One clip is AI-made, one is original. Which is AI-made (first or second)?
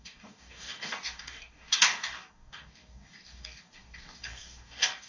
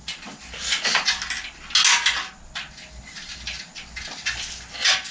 first